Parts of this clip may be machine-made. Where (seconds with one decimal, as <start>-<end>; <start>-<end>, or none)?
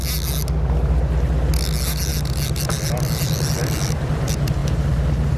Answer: 4.6-5.4